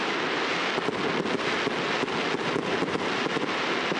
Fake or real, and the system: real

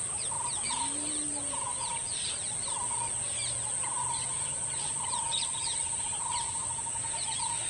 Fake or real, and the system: real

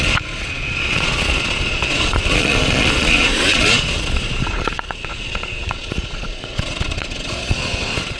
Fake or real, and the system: fake, vocoder, Vocos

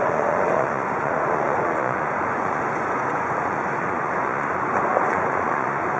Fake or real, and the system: fake, vocoder, Vocos